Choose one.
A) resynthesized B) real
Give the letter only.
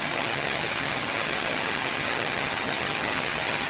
A